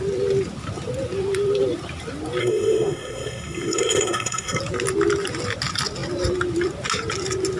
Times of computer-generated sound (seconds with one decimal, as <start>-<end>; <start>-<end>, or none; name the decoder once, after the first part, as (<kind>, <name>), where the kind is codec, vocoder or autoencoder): 2.4-4.6 (codec, SNAC)